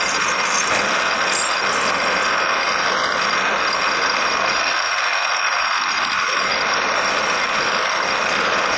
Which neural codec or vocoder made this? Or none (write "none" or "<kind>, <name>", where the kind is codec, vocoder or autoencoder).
none